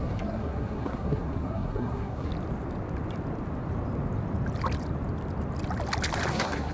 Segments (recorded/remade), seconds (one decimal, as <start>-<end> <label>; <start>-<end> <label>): 0.0-2.3 remade; 2.3-6.3 recorded; 6.3-6.7 remade